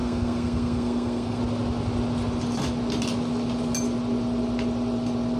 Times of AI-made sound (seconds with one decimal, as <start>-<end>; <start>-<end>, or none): 0.0-1.4